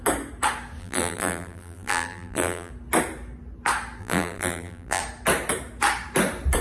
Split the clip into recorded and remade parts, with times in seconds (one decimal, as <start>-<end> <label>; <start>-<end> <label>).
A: 0.0-0.8 recorded; 0.8-2.7 remade; 2.7-4.0 recorded; 4.0-5.0 remade; 5.0-6.6 recorded